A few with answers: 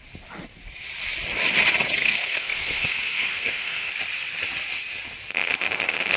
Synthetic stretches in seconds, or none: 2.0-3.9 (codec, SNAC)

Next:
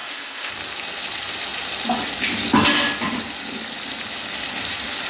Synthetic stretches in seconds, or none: 0.0-0.5 (codec, ZipCodec)

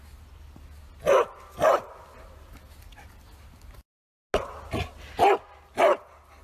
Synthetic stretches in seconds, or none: none

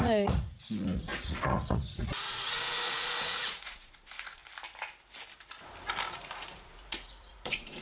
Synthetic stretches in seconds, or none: 0.0-4.4 (vocoder, Vocos); 6.1-7.8

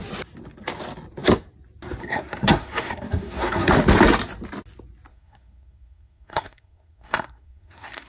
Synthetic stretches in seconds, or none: 2.0-3.7 (codec, SNAC); 5.1-8.1